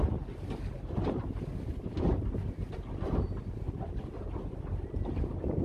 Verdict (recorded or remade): recorded